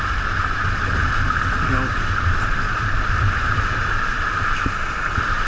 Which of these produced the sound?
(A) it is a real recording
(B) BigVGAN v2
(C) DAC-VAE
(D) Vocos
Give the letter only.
A